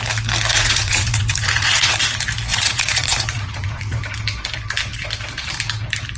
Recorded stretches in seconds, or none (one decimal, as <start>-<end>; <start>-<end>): 0.0-0.5; 2.0-2.5; 4.0-6.2